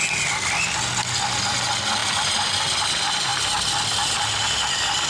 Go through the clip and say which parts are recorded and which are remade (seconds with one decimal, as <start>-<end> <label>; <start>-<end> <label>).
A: 0.0-5.1 recorded